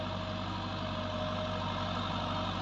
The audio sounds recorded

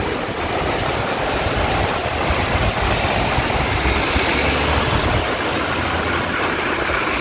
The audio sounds recorded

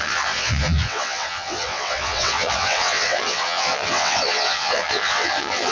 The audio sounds remade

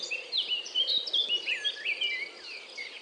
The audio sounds recorded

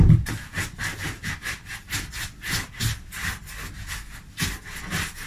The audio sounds recorded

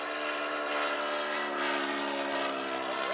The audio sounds recorded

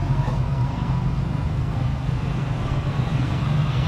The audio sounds remade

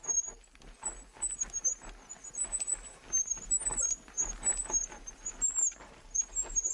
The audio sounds recorded